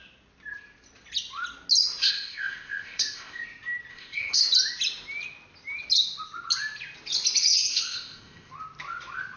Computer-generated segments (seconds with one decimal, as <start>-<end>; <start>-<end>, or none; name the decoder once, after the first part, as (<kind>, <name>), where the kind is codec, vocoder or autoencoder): 2.0-3.4 (codec, ZipCodec); 3.9-4.4; 7.7-8.5